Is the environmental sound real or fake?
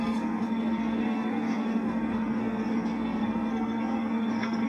fake